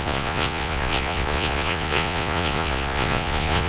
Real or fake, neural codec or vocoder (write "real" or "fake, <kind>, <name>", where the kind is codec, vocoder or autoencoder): fake, vocoder, Vocos